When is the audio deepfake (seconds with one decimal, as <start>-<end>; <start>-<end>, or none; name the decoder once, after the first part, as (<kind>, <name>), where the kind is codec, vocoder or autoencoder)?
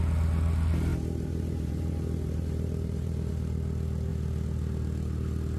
0.9-3.3 (vocoder, BigVGAN v2)